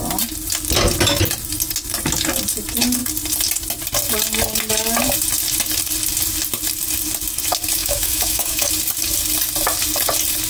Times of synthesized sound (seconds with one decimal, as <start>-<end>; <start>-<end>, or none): 7.8-8.7